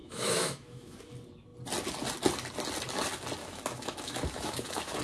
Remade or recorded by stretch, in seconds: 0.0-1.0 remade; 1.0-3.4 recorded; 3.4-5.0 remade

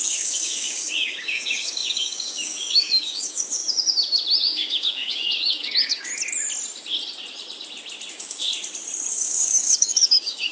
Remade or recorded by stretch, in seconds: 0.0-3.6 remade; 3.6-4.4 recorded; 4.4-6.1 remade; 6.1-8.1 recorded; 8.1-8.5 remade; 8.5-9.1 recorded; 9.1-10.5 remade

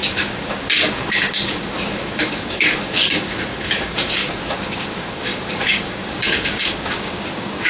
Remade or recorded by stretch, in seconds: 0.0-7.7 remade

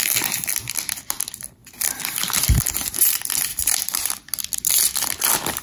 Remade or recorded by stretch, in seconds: 0.0-3.5 recorded; 3.5-4.1 remade; 4.1-5.6 recorded

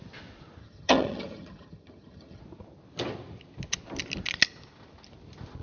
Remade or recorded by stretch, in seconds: 0.0-0.6 recorded; 0.6-2.4 remade; 2.4-5.6 recorded